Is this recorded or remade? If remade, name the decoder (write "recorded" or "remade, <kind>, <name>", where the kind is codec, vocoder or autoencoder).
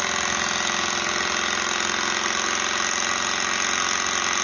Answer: recorded